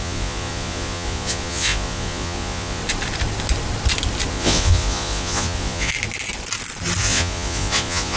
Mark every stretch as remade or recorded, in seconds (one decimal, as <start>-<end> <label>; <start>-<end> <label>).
0.0-2.8 remade; 2.8-4.3 recorded; 4.3-5.9 remade; 5.9-7.0 recorded; 7.0-8.2 remade